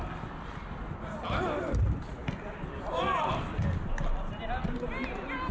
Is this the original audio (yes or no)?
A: yes